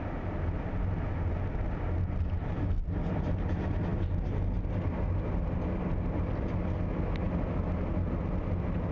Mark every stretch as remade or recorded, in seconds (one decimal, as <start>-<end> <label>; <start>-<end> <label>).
0.0-8.9 recorded